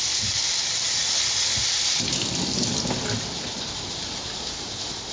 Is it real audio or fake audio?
real